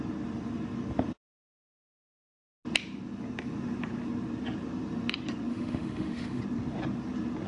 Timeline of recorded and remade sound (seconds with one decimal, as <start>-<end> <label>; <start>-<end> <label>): 0.0-5.5 recorded; 5.5-6.4 remade; 6.4-7.5 recorded

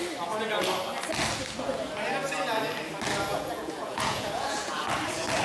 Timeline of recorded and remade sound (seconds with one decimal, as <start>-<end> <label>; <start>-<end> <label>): 0.0-3.3 recorded; 3.3-4.7 remade; 4.7-5.4 recorded

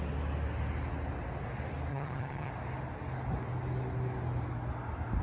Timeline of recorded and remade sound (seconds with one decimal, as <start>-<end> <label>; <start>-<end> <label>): 0.0-1.9 recorded; 1.9-2.5 remade; 2.5-5.2 recorded

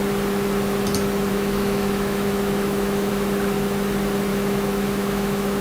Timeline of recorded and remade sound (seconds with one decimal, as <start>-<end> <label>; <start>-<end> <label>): 0.0-1.3 recorded; 1.3-3.1 remade; 3.1-4.3 recorded; 4.3-5.6 remade